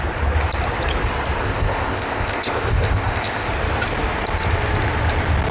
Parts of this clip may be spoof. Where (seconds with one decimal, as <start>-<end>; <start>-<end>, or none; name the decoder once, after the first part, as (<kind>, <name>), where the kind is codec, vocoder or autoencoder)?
1.4-3.5 (codec, ZipCodec)